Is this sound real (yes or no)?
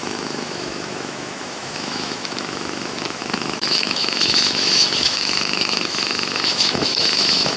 no